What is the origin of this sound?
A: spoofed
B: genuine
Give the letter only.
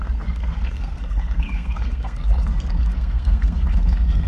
A